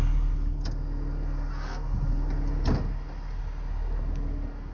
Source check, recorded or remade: recorded